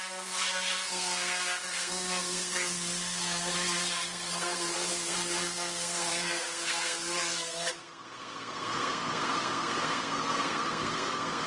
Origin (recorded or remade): remade